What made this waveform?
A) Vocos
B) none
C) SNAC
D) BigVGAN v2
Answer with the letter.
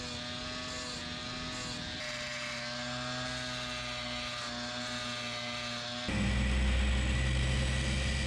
B